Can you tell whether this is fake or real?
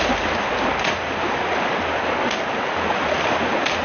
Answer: real